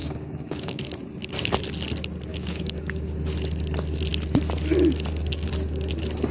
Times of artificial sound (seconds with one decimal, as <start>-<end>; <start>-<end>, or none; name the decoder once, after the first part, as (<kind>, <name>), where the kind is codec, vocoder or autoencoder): 0.0-0.8 (codec, DAC); 2.3-3.1